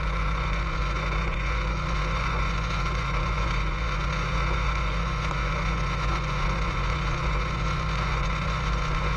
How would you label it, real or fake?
fake